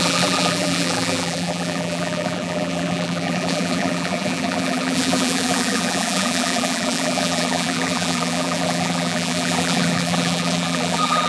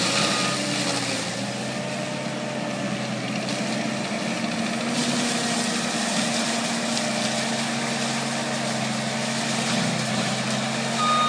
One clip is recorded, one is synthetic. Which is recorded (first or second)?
second